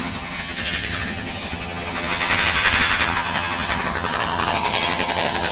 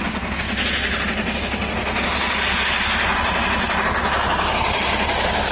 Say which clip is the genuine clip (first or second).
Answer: second